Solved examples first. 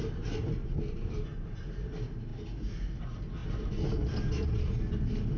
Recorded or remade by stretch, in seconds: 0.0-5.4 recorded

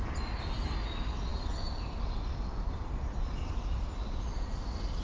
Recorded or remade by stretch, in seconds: 0.0-5.0 recorded

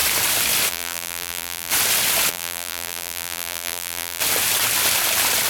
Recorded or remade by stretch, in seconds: 0.0-0.7 recorded; 0.7-1.7 remade; 1.7-2.3 recorded; 2.3-4.2 remade; 4.2-5.5 recorded

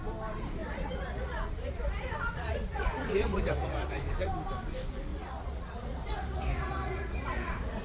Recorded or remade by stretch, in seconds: 0.0-0.6 recorded; 0.6-4.0 remade; 4.0-5.1 recorded; 5.1-7.8 remade

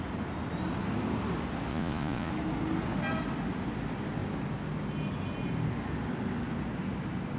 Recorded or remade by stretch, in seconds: 0.0-1.7 recorded; 1.7-2.3 remade; 2.3-7.4 recorded

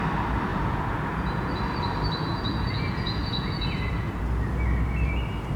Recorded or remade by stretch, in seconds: 0.0-0.5 recorded; 0.5-1.5 remade; 1.5-2.2 recorded; 2.2-4.2 remade; 4.2-5.6 recorded

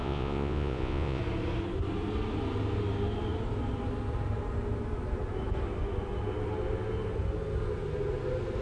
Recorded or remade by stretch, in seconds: 0.0-1.2 remade; 1.2-8.6 recorded